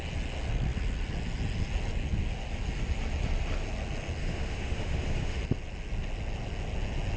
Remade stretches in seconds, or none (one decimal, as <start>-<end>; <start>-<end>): 4.2-5.4